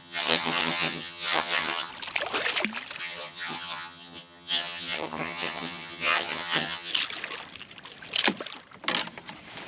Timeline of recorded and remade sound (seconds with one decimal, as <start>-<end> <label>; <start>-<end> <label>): 0.0-1.9 remade; 1.9-3.0 recorded; 3.0-6.9 remade; 6.9-9.7 recorded